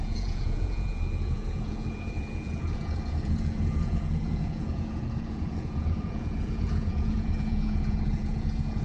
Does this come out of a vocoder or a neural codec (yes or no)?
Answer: yes